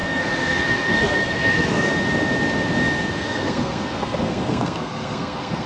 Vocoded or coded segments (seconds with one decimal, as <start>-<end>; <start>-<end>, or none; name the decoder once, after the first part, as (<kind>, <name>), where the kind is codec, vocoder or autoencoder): 0.0-1.9 (codec, SNAC); 3.1-5.7